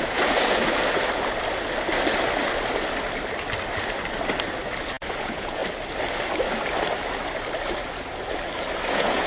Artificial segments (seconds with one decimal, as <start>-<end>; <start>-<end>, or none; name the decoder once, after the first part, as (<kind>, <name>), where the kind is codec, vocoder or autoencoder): 0.0-0.6 (vocoder, Vocos); 5.1-5.6; 8.9-9.3